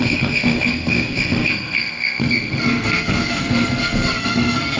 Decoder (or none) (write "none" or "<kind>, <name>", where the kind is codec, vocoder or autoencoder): codec, SNAC